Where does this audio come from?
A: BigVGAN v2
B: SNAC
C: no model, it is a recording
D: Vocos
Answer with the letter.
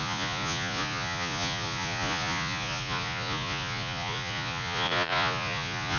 D